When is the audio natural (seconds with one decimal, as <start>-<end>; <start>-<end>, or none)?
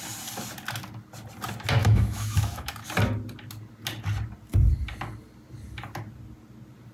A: 0.0-1.8; 2.7-6.9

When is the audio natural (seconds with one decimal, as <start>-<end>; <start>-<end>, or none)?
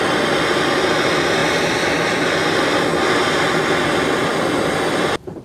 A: 1.4-2.5; 2.9-4.8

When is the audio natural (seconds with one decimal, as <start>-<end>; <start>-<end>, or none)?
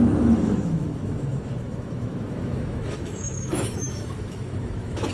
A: none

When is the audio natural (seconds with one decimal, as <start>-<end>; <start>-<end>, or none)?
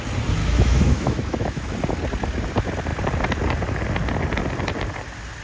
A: 0.0-0.4; 1.7-5.4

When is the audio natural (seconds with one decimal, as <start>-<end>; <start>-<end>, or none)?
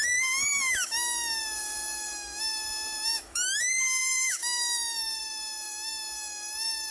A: none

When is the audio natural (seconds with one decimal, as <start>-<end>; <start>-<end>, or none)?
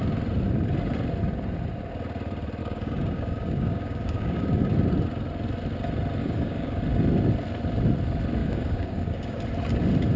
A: 0.0-2.6; 4.6-6.2; 6.8-8.4; 9.4-10.2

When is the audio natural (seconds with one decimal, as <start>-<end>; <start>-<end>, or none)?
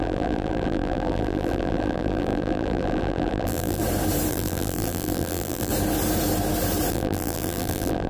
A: 3.8-4.3; 5.7-6.9